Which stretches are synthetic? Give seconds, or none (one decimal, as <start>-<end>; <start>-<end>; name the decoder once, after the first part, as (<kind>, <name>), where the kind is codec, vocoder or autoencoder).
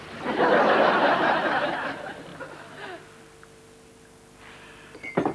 none